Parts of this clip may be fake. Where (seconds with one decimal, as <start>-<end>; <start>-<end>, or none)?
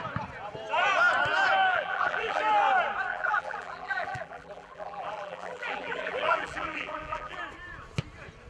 1.7-2.4; 3.1-7.4